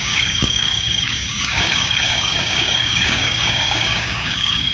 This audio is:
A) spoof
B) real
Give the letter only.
A